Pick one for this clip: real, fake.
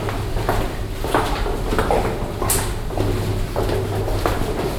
real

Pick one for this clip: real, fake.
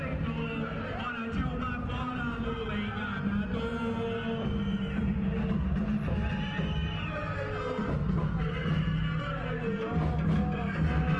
real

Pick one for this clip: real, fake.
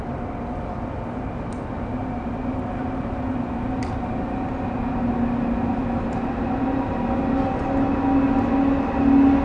real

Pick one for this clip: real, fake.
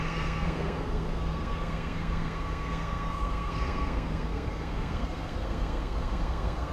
fake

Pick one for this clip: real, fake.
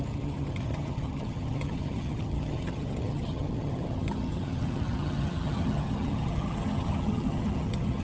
fake